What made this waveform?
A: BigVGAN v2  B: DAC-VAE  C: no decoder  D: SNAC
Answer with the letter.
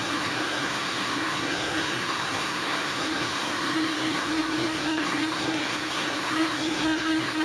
D